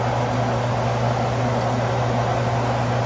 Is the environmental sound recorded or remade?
recorded